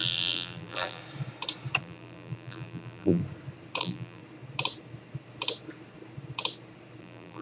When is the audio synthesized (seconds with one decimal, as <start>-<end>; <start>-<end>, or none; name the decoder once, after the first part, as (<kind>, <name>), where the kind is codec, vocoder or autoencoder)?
0.0-1.0 (vocoder, BigVGAN v2); 1.8-3.2; 3.8-4.2; 7.0-7.4